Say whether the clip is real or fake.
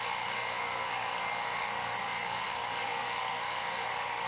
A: fake